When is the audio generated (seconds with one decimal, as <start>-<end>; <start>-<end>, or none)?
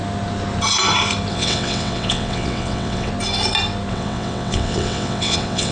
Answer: 1.3-3.1; 3.9-5.7